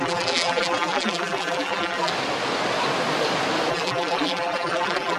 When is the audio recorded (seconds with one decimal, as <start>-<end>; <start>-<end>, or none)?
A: 2.1-3.7